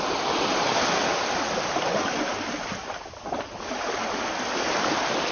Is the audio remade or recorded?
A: recorded